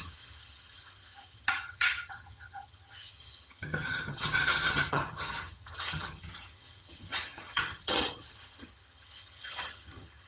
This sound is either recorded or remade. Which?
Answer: remade